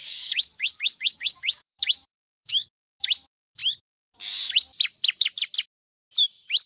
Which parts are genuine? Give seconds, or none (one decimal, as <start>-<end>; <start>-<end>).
2.7-6.7